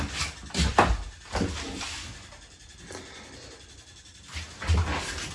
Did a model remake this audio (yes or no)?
no